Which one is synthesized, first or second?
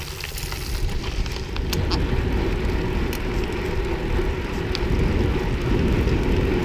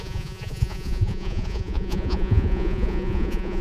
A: second